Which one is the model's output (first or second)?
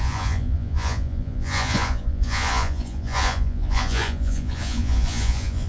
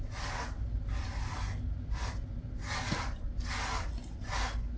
first